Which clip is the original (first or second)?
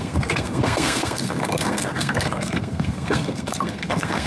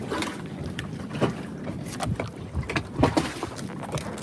second